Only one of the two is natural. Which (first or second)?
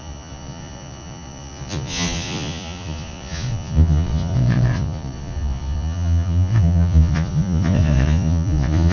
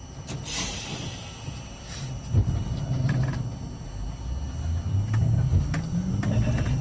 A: second